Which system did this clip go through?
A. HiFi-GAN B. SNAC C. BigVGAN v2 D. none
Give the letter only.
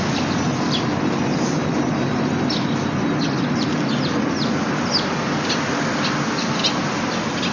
D